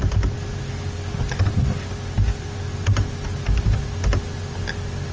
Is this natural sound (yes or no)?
yes